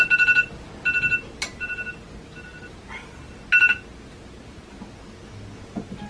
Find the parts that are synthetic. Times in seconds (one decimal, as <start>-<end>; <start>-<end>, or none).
none

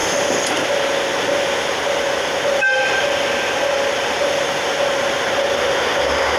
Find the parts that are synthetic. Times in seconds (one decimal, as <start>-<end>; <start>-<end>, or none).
none